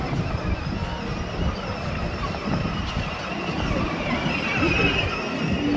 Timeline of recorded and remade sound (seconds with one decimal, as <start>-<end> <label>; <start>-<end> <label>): 0.0-1.1 recorded; 1.1-4.6 remade; 4.6-5.8 recorded